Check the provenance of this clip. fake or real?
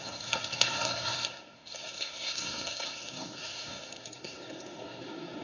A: fake